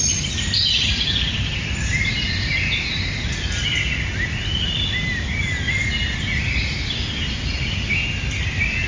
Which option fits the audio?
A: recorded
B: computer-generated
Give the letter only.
A